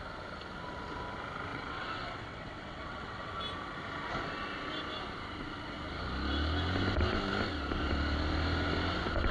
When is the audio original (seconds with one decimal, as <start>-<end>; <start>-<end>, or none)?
0.0-1.5; 3.3-9.3